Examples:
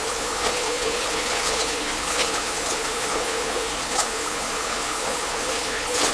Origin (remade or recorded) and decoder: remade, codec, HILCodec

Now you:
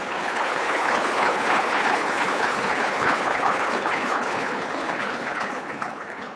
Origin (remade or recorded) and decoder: remade, codec, HILCodec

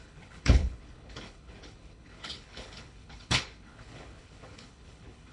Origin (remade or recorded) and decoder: remade, codec, HILCodec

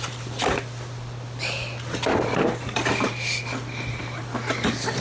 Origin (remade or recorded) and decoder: recorded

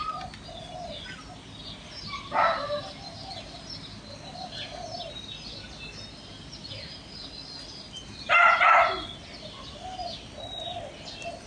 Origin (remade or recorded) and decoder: recorded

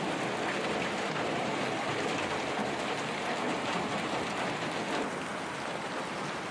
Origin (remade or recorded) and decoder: recorded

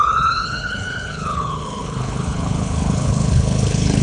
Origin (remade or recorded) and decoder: remade, codec, HILCodec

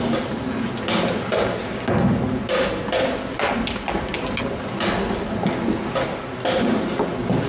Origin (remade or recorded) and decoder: recorded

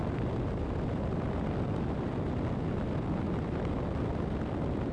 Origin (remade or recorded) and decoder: recorded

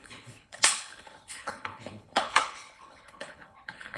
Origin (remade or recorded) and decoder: remade, codec, HILCodec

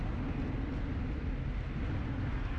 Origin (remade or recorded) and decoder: recorded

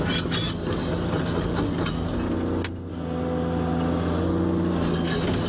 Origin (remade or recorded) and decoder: recorded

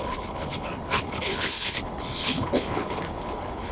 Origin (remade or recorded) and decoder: remade, codec, HILCodec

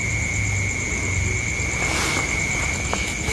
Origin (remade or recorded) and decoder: recorded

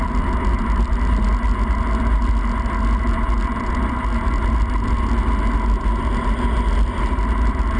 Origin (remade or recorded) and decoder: recorded